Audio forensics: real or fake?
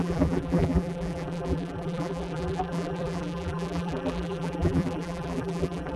fake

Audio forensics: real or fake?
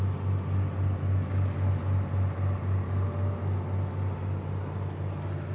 real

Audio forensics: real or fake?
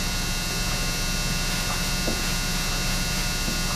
real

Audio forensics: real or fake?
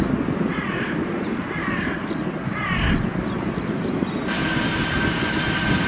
real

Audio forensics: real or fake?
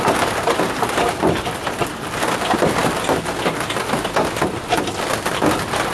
fake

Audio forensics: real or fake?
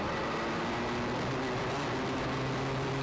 real